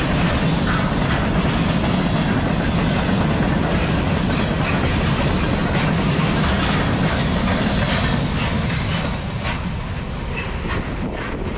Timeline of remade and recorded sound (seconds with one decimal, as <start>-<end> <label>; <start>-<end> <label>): 0.0-11.6 recorded